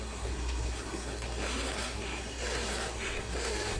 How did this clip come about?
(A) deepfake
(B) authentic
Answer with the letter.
A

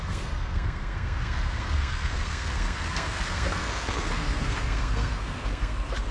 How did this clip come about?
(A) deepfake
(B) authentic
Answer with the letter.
A